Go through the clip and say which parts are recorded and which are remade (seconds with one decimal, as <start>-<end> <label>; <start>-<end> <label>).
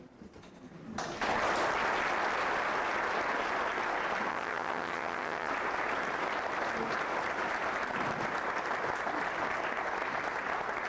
0.0-4.3 recorded; 4.3-5.5 remade; 5.5-10.9 recorded